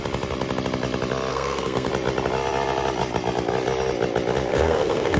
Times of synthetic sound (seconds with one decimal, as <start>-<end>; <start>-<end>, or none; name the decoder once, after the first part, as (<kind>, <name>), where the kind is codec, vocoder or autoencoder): 1.3-1.9 (codec, SNAC); 4.5-5.2